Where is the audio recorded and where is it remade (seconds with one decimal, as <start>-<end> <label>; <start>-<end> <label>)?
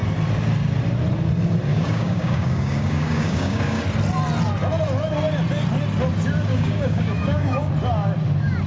0.0-1.7 recorded; 1.7-3.8 remade; 3.8-6.5 recorded; 6.5-7.7 remade; 7.7-8.7 recorded